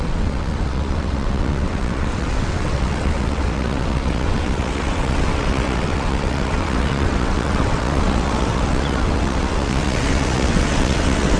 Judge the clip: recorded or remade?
remade